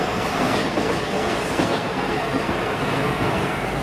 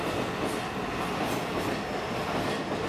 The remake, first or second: first